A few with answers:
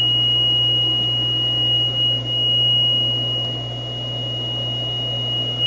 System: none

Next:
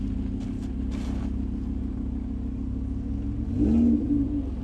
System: none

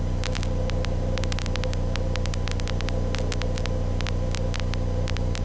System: none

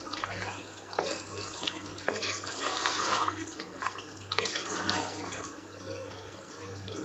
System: codec, SNAC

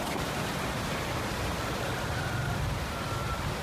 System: none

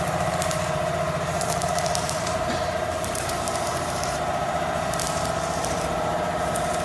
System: vocoder, BigVGAN v2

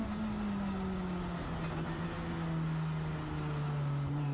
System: none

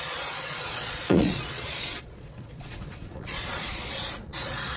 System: vocoder, Vocos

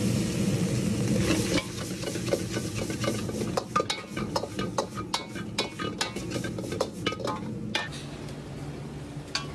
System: none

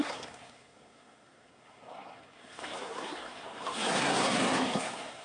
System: codec, SNAC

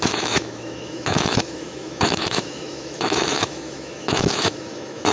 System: autoencoder, DAC-VAE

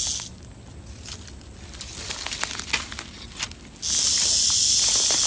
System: none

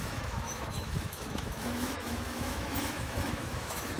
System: autoencoder, DAC-VAE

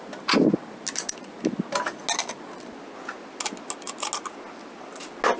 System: none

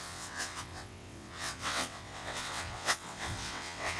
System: vocoder, WaveNeXt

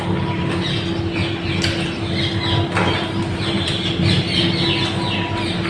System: none